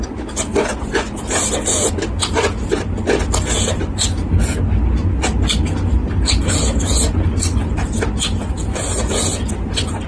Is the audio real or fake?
real